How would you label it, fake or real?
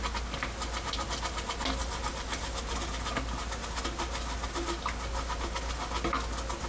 real